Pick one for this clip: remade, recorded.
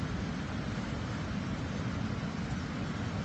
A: recorded